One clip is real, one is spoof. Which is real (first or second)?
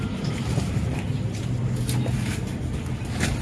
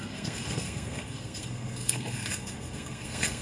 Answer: first